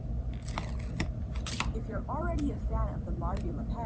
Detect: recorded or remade remade